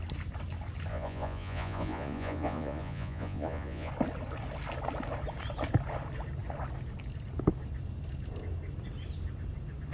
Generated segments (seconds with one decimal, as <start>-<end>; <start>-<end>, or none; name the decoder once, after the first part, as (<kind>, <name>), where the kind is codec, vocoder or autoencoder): 0.9-3.9 (vocoder, Vocos)